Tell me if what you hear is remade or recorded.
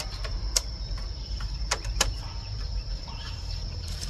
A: remade